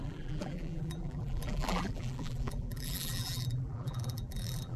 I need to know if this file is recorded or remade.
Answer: remade